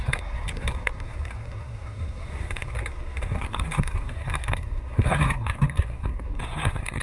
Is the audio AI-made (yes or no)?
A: yes